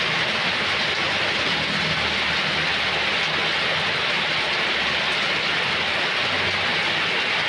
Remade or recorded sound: recorded